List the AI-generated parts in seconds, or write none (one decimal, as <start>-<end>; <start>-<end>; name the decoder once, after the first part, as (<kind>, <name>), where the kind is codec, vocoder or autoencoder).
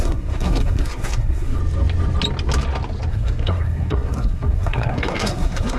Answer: 0.0-1.6 (codec, SNAC); 3.1-5.8